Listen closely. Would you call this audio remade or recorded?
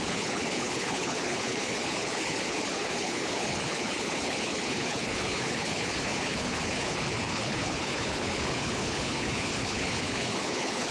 remade